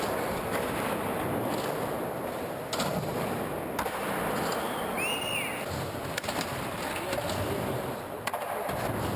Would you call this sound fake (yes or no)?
no